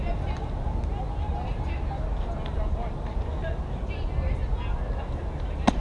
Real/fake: real